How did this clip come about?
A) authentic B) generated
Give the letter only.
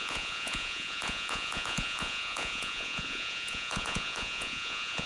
B